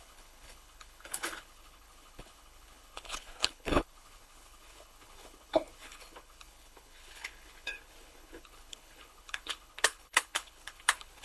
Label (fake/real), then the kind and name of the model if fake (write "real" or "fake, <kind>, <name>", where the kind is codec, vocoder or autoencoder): fake, codec, HILCodec